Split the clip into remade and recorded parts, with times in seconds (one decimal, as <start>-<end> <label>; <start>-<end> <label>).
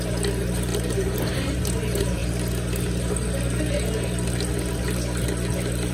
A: 0.0-2.2 remade; 2.2-5.9 recorded